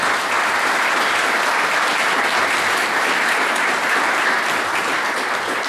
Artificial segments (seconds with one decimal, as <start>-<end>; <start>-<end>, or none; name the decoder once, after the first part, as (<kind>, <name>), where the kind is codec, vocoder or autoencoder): none